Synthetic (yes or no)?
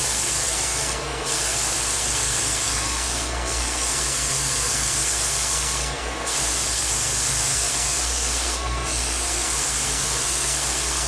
yes